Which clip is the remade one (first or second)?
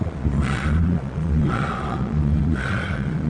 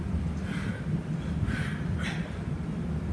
first